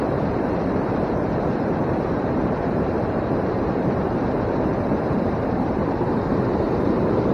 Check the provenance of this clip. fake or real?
fake